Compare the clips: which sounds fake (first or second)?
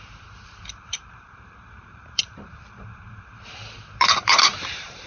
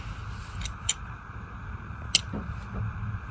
first